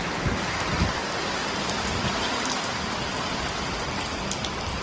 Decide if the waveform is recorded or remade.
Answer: recorded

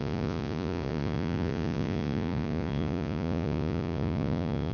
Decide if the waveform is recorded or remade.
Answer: remade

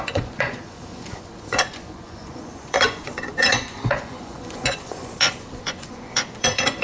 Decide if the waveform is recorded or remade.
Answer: remade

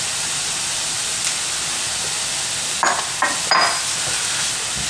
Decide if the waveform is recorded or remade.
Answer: recorded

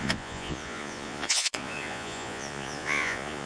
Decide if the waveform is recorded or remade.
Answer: remade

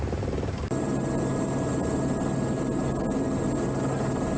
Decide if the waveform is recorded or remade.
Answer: recorded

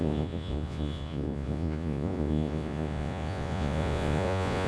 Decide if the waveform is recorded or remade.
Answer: remade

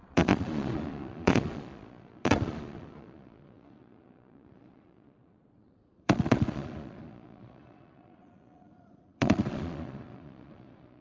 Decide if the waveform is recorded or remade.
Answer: remade